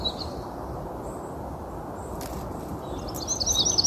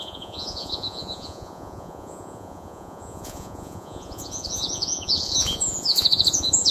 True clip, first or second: first